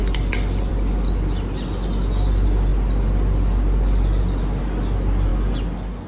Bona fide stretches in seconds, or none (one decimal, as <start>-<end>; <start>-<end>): 0.0-6.1